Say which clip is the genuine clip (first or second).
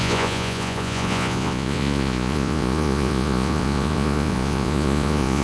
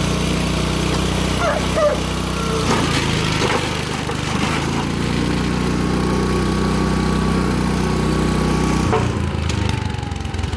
second